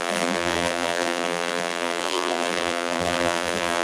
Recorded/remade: remade